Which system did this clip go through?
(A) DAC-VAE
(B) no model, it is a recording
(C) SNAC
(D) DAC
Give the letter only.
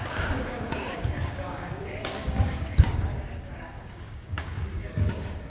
D